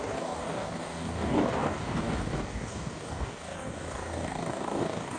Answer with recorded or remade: remade